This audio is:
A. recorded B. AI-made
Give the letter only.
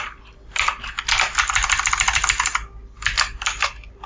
A